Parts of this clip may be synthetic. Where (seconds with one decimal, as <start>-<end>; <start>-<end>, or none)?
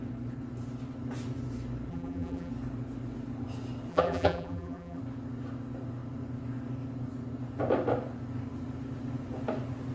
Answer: 1.9-2.5; 3.9-5.0